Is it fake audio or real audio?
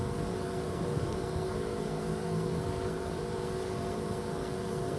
fake